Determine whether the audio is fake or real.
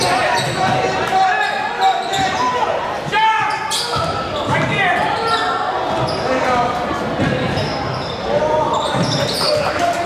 real